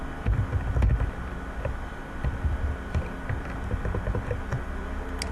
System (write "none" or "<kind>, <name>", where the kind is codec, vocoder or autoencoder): none